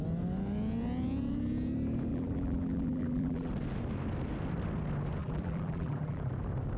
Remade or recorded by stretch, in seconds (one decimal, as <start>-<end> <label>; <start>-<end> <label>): 0.0-2.1 recorded; 2.1-3.5 remade; 3.5-5.2 recorded; 5.2-6.3 remade; 6.3-6.8 recorded